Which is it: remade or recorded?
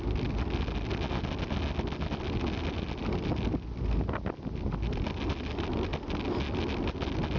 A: recorded